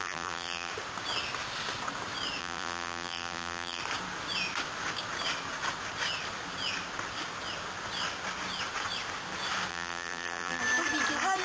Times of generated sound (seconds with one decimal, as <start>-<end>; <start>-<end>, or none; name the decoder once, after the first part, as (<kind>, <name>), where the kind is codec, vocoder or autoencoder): 0.0-0.7 (vocoder, BigVGAN v2); 2.4-3.8; 9.7-10.6